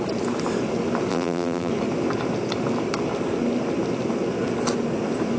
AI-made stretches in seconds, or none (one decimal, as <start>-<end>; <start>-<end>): 1.1-1.7